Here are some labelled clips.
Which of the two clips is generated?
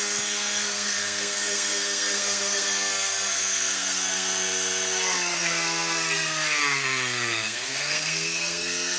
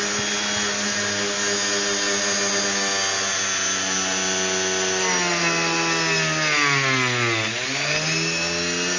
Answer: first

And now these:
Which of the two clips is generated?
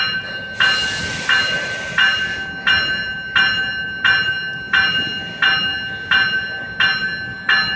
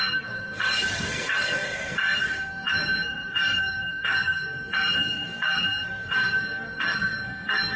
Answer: second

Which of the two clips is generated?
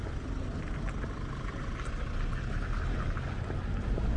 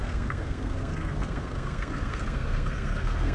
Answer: second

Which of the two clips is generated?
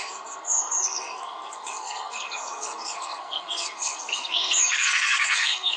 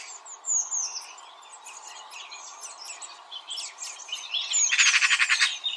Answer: first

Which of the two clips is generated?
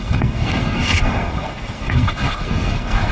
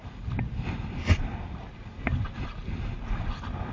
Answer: first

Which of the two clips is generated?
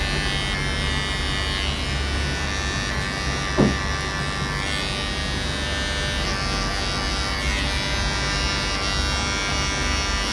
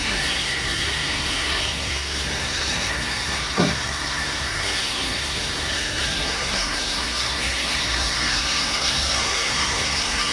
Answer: second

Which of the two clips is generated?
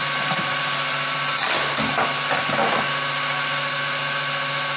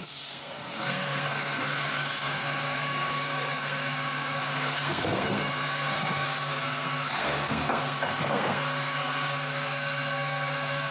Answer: second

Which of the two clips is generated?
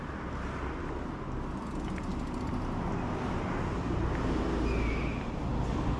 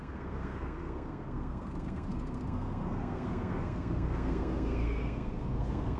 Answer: second